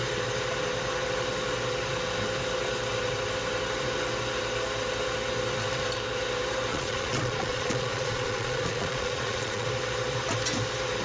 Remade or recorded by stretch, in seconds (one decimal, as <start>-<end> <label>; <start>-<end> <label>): 0.0-6.7 recorded; 6.7-9.7 remade; 9.7-11.0 recorded